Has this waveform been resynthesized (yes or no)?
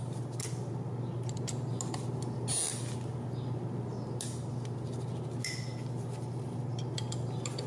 no